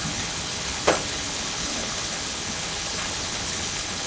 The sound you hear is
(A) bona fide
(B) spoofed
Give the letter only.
B